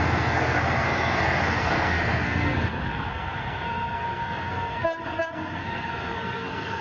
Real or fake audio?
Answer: fake